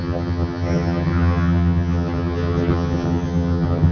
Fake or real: fake